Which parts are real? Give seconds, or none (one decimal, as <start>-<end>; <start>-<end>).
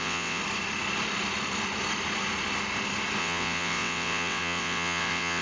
0.4-3.2